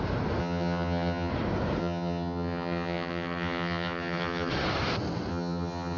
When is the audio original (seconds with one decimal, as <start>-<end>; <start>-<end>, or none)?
0.0-0.4; 1.3-1.8; 4.5-5.3